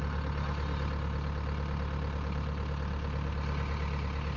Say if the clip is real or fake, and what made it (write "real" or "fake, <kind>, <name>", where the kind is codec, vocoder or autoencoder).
real